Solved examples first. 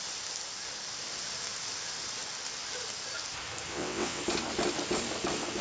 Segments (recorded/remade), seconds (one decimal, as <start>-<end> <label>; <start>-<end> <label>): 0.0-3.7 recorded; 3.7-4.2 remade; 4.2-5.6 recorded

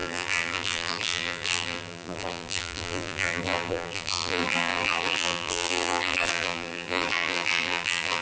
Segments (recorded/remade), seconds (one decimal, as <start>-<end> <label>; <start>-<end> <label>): 0.0-8.2 remade

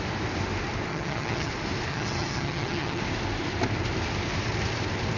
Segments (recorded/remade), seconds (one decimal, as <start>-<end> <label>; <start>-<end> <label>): 0.0-0.9 recorded; 0.9-1.5 remade; 1.5-1.9 recorded; 1.9-3.0 remade; 3.0-5.2 recorded